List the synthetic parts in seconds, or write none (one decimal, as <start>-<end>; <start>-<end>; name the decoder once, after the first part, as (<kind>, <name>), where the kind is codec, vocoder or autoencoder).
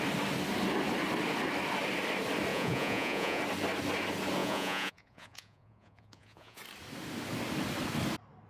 2.5-3.4 (vocoder, Vocos); 4.4-6.6